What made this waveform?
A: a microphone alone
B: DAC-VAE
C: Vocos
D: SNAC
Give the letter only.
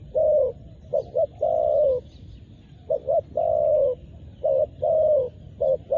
A